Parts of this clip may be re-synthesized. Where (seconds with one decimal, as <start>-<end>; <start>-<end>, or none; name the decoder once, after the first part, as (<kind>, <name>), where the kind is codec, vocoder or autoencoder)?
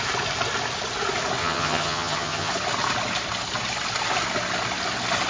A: 1.4-2.5 (vocoder, HiFi-GAN)